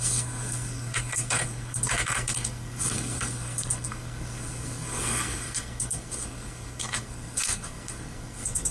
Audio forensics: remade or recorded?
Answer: remade